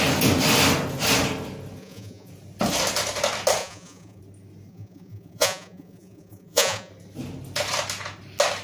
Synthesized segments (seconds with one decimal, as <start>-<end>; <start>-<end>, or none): 1.8-2.3; 3.6-4.2; 4.7-6.9